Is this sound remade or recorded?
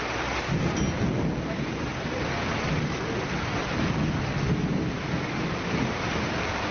recorded